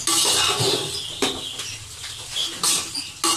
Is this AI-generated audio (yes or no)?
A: no